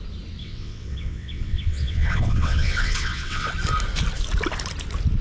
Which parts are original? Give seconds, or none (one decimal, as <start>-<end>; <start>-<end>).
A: 0.0-0.4; 3.5-5.2